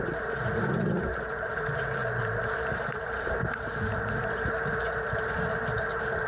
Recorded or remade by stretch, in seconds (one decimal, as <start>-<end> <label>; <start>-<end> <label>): 0.0-1.1 recorded; 1.1-4.1 remade; 4.1-6.3 recorded